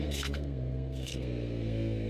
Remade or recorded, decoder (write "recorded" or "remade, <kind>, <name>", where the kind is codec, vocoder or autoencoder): remade, codec, SNAC